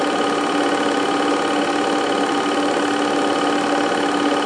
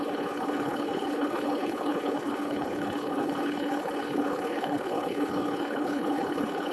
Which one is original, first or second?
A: first